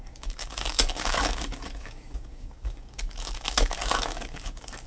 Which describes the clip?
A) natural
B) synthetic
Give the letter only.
B